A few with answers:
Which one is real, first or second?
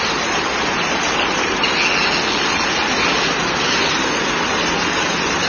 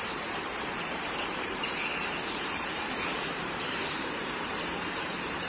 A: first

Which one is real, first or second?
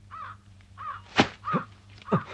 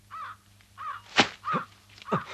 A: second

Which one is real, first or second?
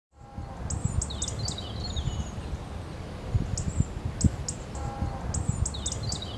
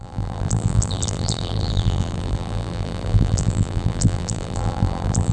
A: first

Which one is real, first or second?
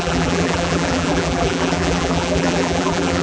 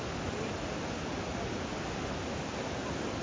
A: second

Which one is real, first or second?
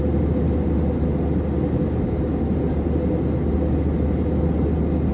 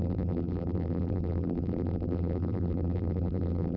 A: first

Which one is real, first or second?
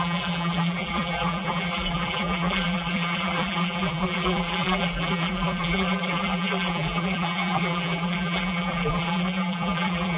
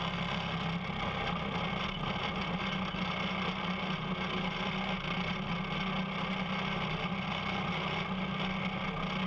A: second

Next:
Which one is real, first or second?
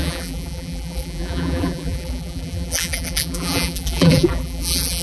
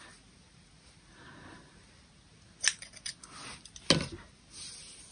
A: second